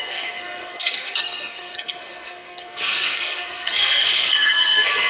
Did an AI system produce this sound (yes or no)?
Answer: yes